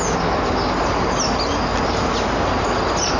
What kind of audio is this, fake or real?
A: real